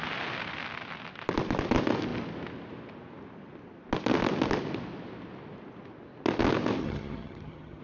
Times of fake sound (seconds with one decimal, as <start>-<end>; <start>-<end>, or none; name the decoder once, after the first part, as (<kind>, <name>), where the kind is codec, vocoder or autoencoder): 6.8-7.8 (vocoder, HiFi-GAN)